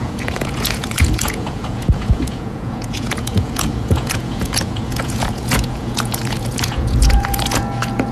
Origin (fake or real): fake